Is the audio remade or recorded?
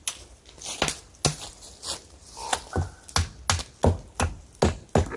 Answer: recorded